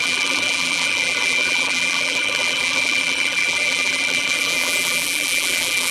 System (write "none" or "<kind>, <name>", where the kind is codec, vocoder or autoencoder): vocoder, BigVGAN v2